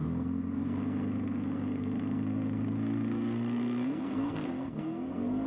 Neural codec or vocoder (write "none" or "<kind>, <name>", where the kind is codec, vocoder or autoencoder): codec, SNAC